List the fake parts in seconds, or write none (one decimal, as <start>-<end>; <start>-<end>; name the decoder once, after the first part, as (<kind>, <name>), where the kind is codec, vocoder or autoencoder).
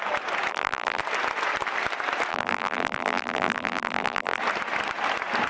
0.5-1.0 (vocoder, BigVGAN v2); 2.3-4.4